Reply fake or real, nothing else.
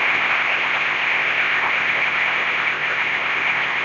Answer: fake